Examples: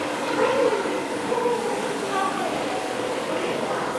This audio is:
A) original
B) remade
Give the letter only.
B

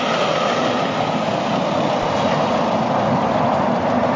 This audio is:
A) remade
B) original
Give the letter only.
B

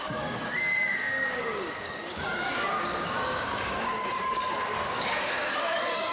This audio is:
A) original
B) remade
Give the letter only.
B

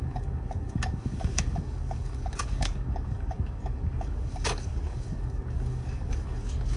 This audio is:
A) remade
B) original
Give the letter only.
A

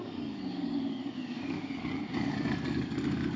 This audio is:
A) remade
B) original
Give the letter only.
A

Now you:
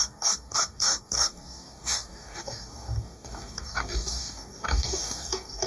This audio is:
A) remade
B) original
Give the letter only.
A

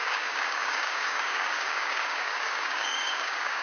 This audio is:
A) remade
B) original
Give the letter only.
A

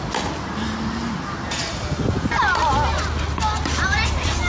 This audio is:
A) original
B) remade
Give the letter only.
A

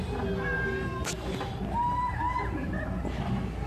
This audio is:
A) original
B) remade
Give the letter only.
A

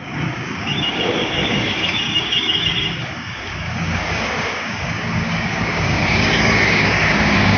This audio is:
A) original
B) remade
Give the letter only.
B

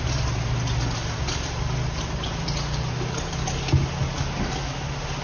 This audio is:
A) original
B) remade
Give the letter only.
A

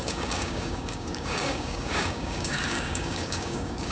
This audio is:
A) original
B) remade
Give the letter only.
B